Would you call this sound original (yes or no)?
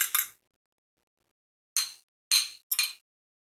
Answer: yes